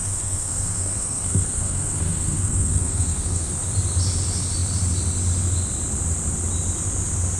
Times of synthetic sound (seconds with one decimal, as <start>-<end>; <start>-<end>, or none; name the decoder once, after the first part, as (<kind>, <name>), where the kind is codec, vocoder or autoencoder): 0.0-3.5 (codec, SNAC)